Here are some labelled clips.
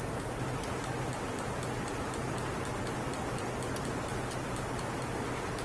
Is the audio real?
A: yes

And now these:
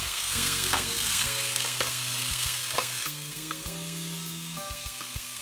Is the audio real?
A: no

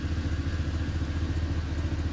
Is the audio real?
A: yes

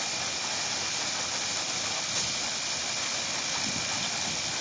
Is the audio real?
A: yes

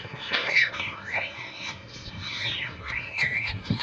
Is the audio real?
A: no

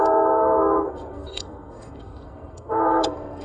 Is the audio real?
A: no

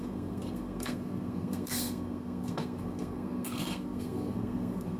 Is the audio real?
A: no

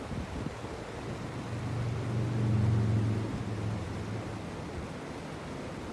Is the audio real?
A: yes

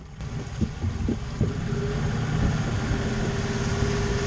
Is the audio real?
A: yes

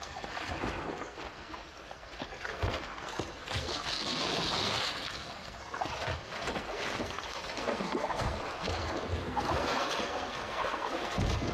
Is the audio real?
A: no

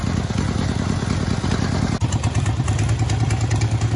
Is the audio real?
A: yes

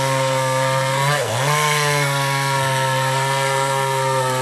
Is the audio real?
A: no